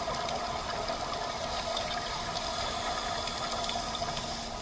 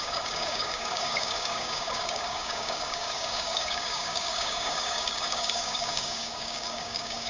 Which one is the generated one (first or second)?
second